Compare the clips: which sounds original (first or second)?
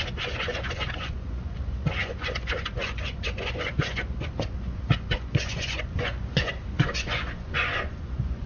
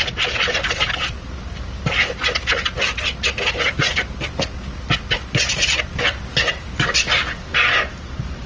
second